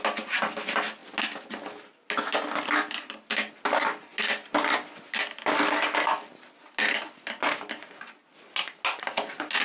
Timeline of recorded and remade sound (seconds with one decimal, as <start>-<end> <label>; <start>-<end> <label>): 0.0-9.6 recorded